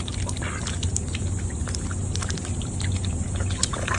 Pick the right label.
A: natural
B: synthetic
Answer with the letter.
A